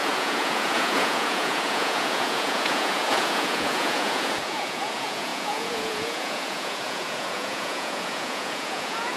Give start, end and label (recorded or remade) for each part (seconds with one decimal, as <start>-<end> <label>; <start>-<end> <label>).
0.0-9.2 remade